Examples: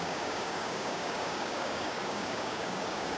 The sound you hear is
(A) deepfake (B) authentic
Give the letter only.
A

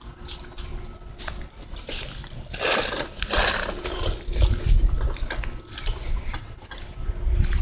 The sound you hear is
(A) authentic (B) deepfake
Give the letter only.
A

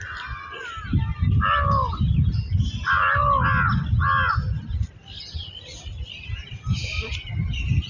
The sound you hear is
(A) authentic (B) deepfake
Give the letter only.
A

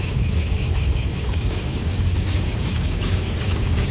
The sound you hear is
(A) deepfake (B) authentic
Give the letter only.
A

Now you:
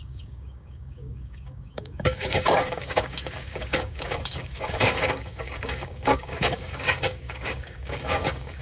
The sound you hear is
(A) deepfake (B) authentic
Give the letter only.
A